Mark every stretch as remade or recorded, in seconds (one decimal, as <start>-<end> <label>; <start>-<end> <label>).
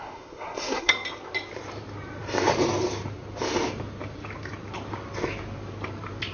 0.0-0.9 remade; 0.9-6.3 recorded